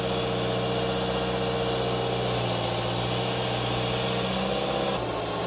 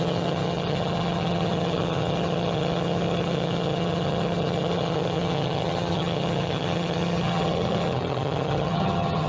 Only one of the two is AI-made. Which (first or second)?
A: second